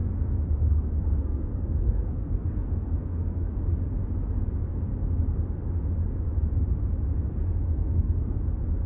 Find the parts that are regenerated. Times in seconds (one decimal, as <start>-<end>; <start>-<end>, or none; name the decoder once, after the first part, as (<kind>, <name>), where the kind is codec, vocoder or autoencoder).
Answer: 0.0-3.6 (codec, SNAC); 7.3-8.4